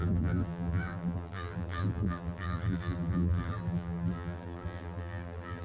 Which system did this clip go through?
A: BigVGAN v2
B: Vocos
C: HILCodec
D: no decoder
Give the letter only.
A